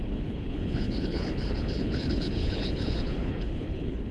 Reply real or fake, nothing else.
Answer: fake